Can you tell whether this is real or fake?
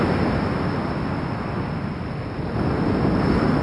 real